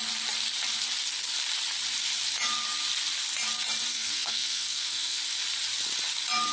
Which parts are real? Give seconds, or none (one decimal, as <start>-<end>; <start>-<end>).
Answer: 0.0-3.9; 5.2-6.5